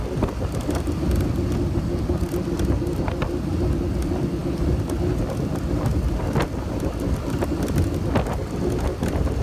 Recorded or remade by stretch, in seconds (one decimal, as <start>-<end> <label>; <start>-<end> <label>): 0.0-9.4 recorded